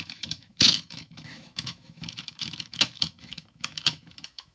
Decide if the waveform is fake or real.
fake